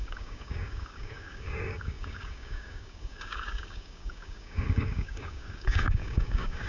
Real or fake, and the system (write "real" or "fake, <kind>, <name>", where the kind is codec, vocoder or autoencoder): fake, codec, DAC